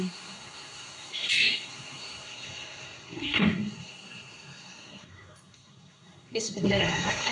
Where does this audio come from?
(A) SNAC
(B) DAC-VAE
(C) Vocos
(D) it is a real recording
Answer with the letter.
A